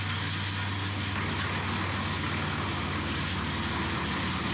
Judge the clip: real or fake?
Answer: real